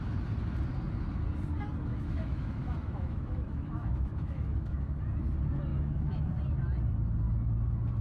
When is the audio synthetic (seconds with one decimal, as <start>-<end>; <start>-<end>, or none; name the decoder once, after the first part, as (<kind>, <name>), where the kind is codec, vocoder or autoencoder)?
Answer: 1.9-5.0 (autoencoder, DAC-VAE); 5.7-6.3